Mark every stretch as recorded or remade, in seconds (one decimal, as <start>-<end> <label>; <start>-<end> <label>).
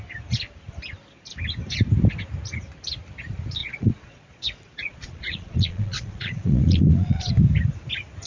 0.0-3.6 recorded; 3.6-7.3 remade; 7.3-8.3 recorded